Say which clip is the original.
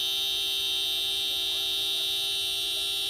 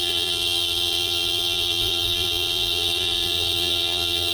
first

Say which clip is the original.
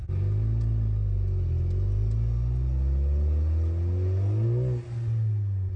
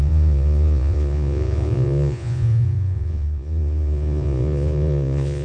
first